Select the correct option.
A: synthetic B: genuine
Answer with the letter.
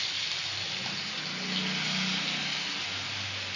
B